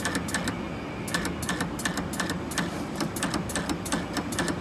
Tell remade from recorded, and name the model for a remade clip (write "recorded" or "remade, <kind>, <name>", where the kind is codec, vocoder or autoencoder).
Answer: recorded